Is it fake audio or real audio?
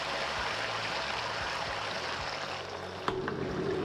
real